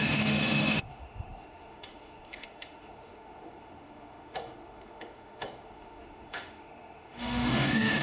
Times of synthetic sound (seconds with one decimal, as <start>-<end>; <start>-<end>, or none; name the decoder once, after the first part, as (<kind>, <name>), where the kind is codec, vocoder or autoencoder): 0.0-8.0 (autoencoder, DAC-VAE)